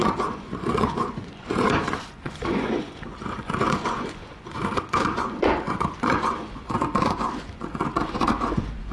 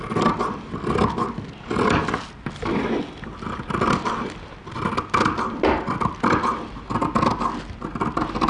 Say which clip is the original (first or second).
second